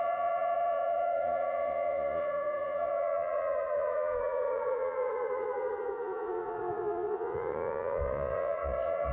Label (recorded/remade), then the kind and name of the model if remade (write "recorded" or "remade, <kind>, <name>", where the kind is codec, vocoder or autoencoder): remade, vocoder, Vocos